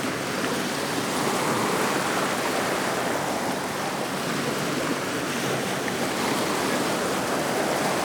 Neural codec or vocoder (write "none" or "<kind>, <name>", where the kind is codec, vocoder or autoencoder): none